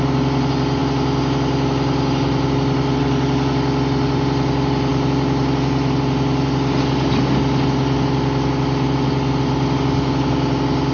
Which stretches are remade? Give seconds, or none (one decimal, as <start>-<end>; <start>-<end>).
none